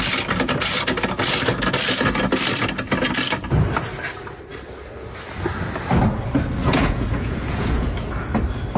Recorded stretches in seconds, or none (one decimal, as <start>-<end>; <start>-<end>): 0.0-6.6; 7.9-8.8